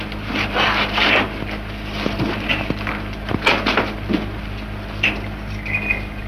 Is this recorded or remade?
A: recorded